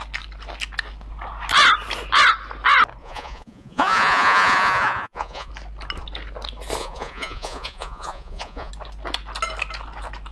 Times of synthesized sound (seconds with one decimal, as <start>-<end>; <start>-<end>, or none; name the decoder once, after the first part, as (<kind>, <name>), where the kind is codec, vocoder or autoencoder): 3.0-5.5 (vocoder, Vocos); 6.8-8.7